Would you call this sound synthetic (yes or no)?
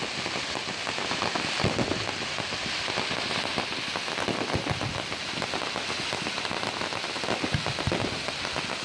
no